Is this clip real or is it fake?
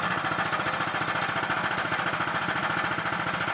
real